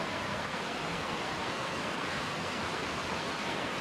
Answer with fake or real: fake